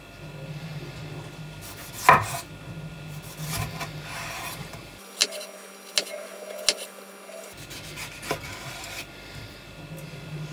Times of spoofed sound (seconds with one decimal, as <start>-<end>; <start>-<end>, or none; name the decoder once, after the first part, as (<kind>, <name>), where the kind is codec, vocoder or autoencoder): none